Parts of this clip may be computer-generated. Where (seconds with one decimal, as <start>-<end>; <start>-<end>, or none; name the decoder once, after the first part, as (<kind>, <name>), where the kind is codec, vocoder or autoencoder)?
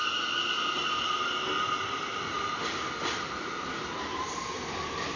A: none